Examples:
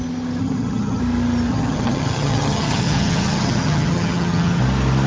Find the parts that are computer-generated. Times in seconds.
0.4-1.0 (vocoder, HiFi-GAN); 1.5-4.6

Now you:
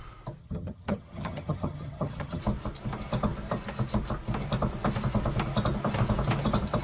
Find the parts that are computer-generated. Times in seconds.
0.4-2.4 (vocoder, HiFi-GAN)

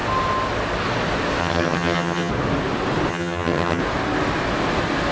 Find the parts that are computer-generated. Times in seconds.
1.4-2.3 (vocoder, HiFi-GAN); 3.1-3.8

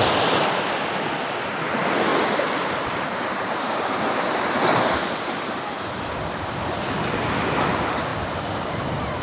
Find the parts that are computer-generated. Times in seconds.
none

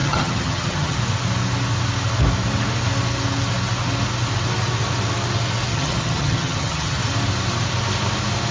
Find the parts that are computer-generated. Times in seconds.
0.0-1.0 (vocoder, HiFi-GAN); 5.7-7.0

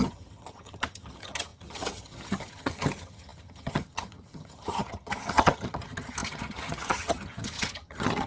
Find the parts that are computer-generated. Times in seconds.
0.0-8.3 (vocoder, HiFi-GAN)